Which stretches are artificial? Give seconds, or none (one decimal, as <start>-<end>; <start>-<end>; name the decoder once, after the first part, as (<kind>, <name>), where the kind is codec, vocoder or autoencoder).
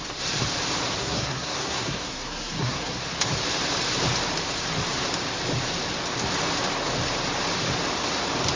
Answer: 1.0-3.0 (codec, SNAC)